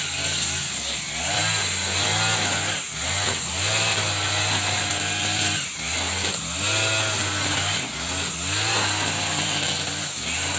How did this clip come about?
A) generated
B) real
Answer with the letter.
B